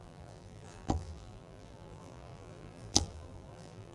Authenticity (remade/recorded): remade